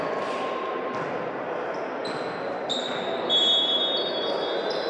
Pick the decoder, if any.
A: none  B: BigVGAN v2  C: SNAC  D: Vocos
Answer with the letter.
A